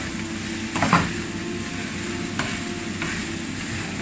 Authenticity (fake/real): real